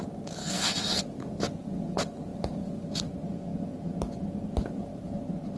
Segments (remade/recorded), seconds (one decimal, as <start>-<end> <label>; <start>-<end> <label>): 0.0-0.4 recorded; 0.4-1.0 remade; 1.0-5.6 recorded